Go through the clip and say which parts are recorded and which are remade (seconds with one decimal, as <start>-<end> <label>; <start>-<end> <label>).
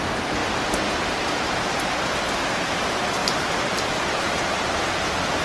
0.0-0.4 remade; 0.4-2.2 recorded; 2.2-3.2 remade; 3.2-3.7 recorded; 3.7-5.4 remade